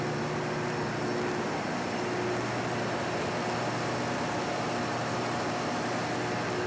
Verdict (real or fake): real